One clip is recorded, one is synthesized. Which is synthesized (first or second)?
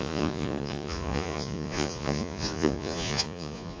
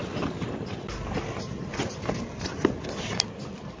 first